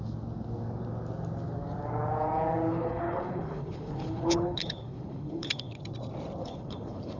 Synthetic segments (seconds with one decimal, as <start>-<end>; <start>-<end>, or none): 2.7-5.8; 6.4-7.2